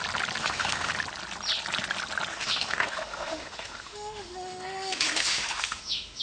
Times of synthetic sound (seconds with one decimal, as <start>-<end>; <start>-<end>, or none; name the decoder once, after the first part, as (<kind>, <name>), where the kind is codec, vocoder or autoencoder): 0.4-0.9 (autoencoder, DAC-VAE); 2.3-6.2